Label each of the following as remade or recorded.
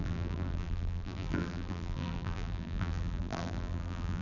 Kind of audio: remade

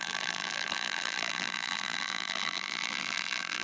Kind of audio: remade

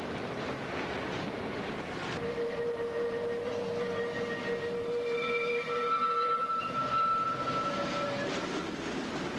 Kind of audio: recorded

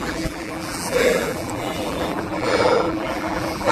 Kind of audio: remade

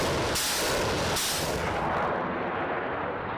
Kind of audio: recorded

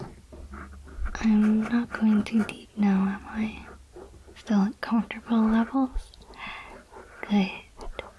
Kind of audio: recorded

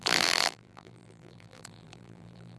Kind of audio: remade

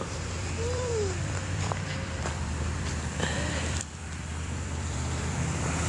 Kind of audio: remade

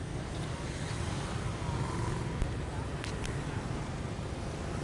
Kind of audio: recorded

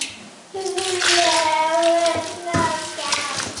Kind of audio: recorded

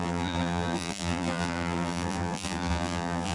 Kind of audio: remade